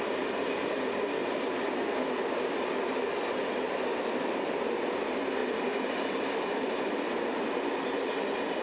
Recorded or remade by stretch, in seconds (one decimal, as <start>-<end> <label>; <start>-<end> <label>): 0.0-5.4 recorded; 5.4-7.2 remade; 7.2-8.6 recorded